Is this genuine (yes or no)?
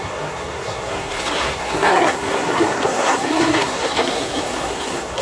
no